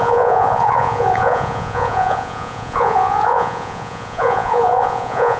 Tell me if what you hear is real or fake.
fake